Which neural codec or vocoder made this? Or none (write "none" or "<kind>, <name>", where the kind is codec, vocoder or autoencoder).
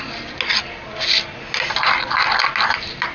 none